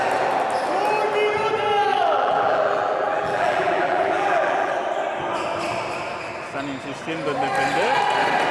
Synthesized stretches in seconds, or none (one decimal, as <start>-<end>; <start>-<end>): 1.9-4.7